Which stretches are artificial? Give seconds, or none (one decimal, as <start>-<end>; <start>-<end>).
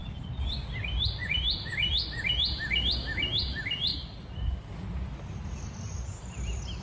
none